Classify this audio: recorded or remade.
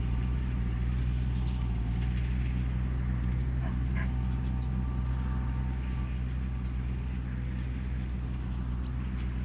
recorded